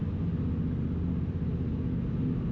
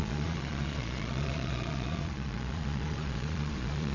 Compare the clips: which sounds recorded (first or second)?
first